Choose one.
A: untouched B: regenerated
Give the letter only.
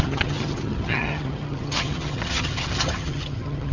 B